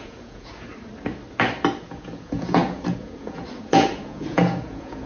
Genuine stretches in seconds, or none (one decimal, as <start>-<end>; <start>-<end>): 0.7-1.8